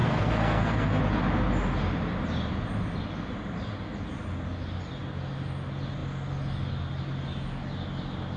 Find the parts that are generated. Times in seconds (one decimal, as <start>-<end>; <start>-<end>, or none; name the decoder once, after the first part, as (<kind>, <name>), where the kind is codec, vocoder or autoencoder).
0.0-1.0 (codec, SNAC)